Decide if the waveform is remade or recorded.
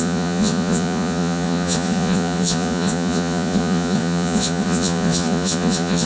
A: remade